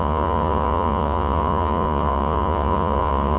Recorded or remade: remade